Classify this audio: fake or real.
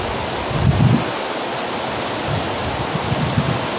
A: real